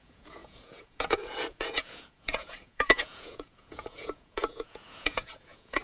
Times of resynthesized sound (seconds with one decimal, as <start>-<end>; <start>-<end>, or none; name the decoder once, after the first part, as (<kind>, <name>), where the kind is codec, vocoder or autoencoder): 0.0-5.8 (vocoder, Vocos)